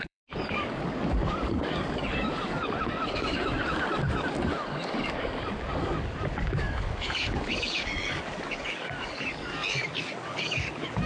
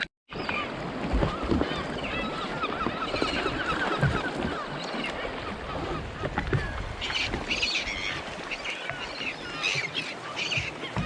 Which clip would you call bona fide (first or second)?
second